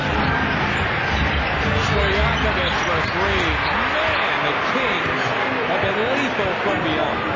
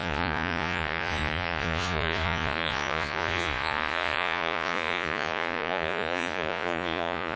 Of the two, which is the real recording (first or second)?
first